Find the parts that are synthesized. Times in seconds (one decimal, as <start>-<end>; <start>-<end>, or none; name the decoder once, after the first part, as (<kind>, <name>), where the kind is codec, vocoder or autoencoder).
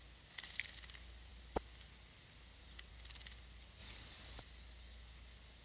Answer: none